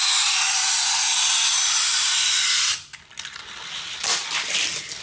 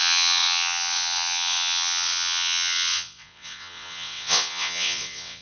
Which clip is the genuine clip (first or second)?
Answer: first